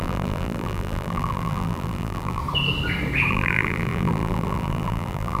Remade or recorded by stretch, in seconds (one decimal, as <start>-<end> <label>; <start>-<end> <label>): 0.0-2.4 remade; 2.4-3.3 recorded; 3.3-5.4 remade